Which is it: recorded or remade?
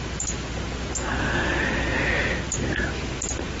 recorded